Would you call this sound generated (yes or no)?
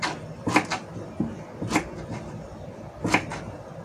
no